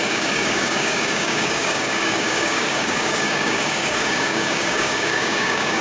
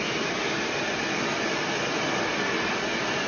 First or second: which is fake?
first